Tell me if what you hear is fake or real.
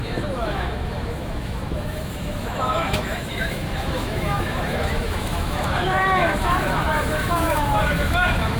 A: fake